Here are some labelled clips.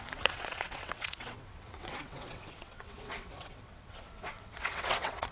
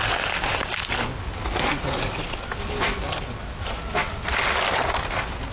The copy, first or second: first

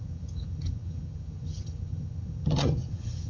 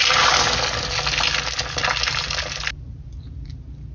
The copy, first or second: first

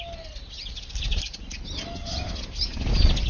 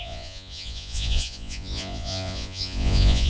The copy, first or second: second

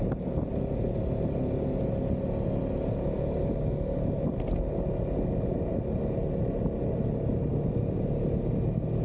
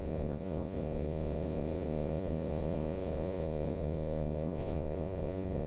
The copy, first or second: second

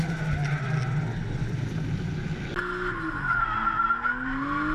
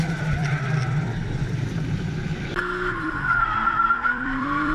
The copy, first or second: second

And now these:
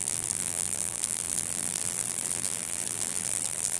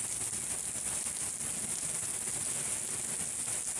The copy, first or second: first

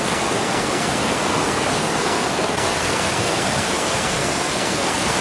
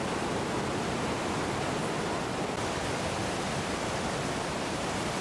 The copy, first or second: first